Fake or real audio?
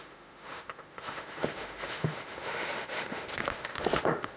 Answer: fake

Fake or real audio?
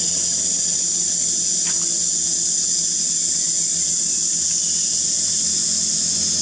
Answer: real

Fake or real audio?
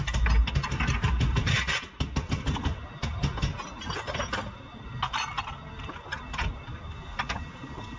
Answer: real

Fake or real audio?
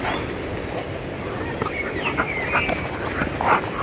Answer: real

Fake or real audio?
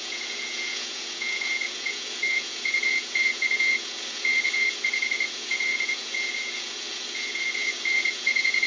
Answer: fake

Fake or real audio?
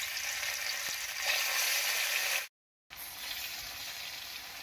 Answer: real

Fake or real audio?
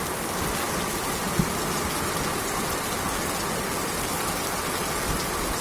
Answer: real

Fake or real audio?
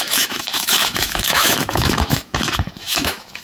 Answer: fake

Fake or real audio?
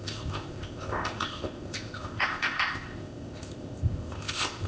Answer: fake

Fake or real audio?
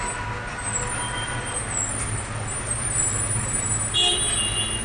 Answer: real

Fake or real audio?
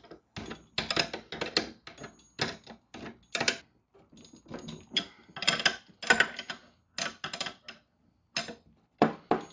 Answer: real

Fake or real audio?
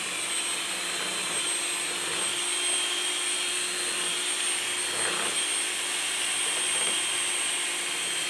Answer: real